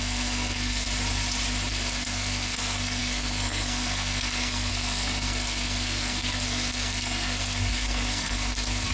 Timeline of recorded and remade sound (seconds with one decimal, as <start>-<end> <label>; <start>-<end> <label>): 0.0-0.9 remade; 0.9-1.7 recorded; 1.7-8.9 remade